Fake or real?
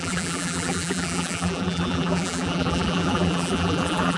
fake